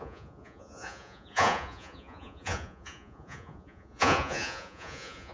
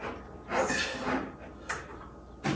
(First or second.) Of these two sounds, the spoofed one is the first